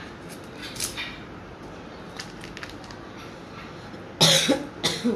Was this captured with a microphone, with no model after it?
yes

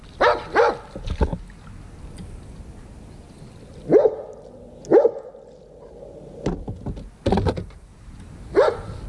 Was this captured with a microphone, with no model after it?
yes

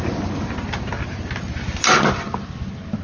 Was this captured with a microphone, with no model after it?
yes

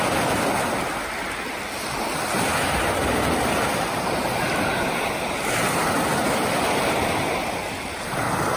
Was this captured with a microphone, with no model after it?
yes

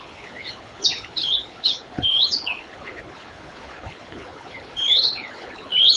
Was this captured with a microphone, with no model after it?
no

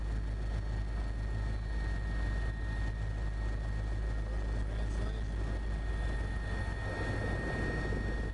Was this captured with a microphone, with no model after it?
yes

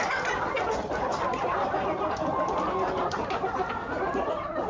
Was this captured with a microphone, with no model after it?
yes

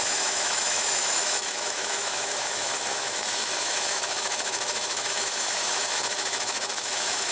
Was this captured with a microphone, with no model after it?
no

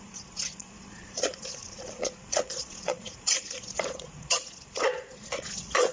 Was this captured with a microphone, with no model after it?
no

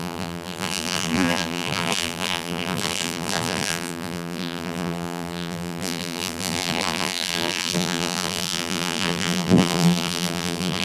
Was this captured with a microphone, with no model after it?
no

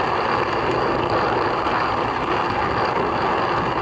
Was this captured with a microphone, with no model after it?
yes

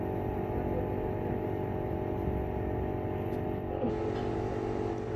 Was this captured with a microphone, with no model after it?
yes